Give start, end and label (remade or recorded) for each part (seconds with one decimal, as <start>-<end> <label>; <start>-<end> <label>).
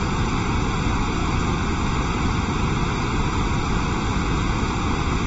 0.0-1.2 recorded; 1.2-1.9 remade; 1.9-5.3 recorded